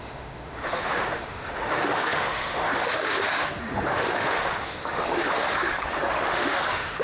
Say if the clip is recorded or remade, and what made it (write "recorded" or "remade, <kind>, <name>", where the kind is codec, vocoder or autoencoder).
remade, autoencoder, DAC-VAE